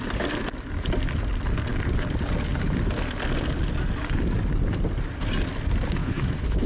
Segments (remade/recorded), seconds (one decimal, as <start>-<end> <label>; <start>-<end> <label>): 0.0-6.0 recorded; 6.0-6.7 remade